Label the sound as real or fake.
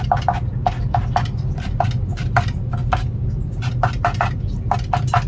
real